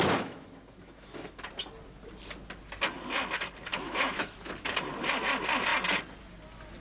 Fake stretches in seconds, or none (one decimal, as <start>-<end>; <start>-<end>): 0.0-1.5; 3.7-4.5